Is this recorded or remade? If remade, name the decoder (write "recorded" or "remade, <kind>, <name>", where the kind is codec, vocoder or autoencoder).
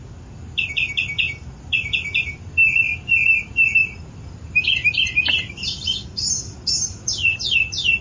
recorded